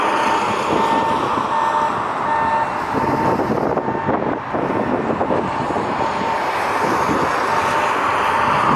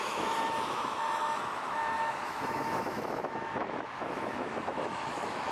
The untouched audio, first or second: first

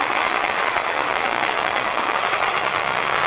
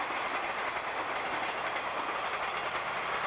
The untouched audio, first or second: second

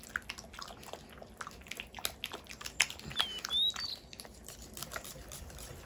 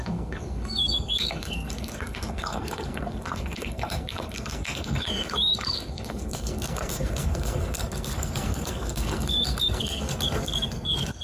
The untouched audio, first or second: first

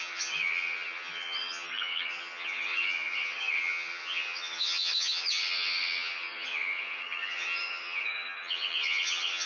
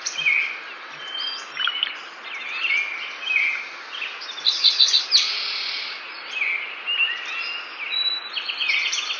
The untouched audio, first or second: second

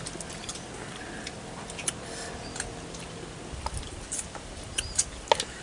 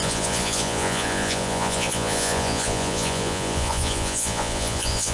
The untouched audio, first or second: first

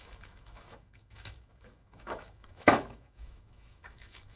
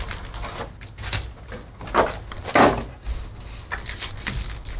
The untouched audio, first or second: second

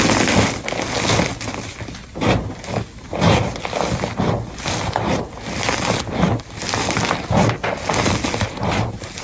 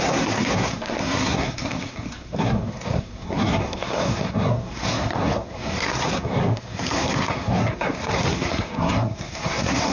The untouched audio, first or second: first